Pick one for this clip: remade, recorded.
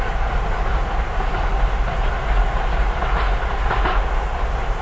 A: recorded